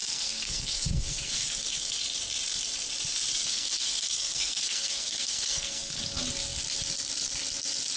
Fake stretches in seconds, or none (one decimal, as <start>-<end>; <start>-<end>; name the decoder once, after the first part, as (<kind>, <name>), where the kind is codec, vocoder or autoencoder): 0.0-1.9 (codec, SNAC); 3.4-6.0